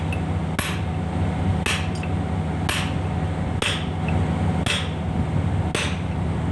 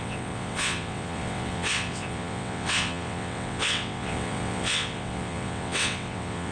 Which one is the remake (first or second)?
second